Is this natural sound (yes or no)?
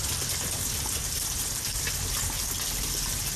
no